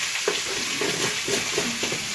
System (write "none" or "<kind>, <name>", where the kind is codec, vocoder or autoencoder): none